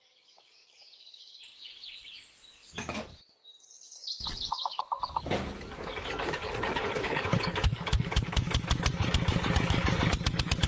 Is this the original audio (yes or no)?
no